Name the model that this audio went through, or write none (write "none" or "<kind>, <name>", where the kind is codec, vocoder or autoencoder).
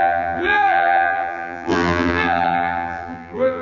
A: vocoder, BigVGAN v2